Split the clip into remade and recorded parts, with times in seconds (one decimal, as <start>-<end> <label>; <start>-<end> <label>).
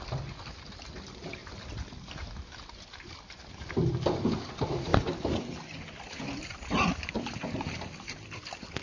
0.0-1.4 remade; 1.4-3.1 recorded; 3.1-4.9 remade; 4.9-6.4 recorded; 6.4-8.8 remade